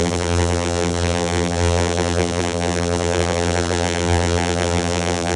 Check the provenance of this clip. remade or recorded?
remade